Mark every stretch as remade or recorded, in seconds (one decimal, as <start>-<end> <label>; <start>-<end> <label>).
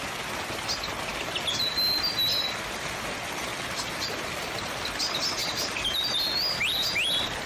0.0-3.5 recorded; 3.5-4.1 remade; 4.1-5.4 recorded; 5.4-7.1 remade; 7.1-7.5 recorded